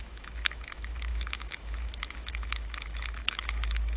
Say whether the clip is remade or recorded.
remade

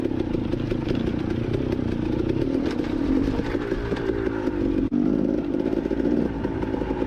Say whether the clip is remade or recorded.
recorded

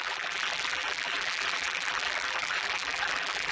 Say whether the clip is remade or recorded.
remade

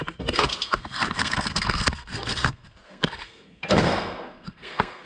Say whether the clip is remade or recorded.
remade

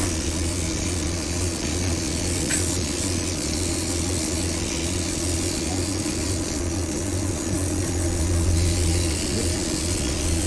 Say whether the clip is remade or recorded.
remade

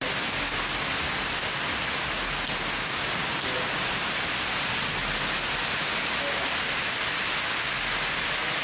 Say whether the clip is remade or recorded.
recorded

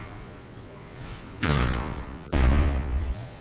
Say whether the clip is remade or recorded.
remade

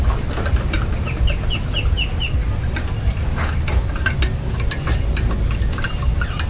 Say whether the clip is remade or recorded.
recorded